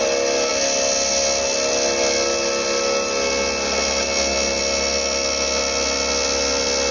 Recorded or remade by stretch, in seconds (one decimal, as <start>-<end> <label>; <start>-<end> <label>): 0.0-6.9 recorded

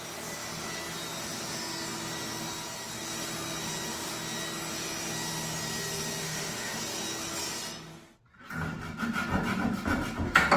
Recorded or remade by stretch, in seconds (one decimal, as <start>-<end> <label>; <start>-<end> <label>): 0.0-6.2 recorded; 6.2-6.8 remade; 6.8-10.6 recorded

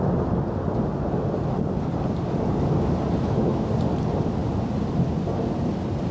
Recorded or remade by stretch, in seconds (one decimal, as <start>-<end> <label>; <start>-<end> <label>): 0.0-3.2 recorded; 3.2-3.7 remade; 3.7-6.1 recorded